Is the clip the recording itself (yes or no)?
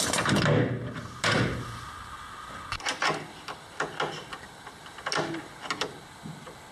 yes